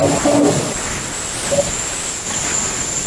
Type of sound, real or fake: real